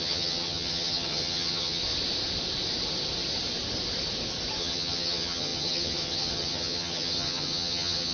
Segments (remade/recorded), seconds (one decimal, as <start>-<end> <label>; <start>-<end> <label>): 0.0-1.8 remade; 1.8-4.6 recorded; 4.6-8.1 remade